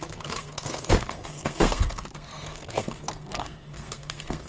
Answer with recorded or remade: remade